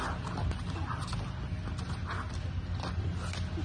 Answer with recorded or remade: recorded